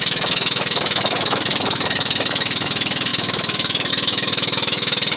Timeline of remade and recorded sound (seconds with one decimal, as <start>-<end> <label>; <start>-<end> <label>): 0.0-5.2 remade